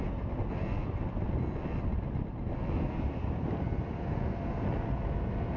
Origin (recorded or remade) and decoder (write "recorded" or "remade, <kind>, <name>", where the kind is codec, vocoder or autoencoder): recorded